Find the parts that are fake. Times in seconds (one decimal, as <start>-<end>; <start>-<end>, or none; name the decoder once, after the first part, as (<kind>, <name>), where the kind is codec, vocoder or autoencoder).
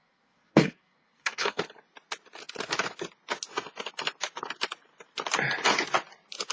0.0-1.6 (codec, SNAC)